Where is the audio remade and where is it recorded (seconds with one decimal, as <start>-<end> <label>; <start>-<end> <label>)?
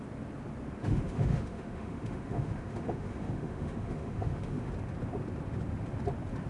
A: 0.0-0.8 recorded; 0.8-4.7 remade; 4.7-6.5 recorded